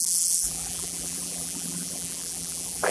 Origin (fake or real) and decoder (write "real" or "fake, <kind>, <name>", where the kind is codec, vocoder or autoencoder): fake, vocoder, BigVGAN v2